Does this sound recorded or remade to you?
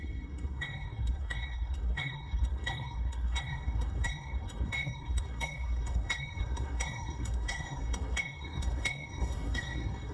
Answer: remade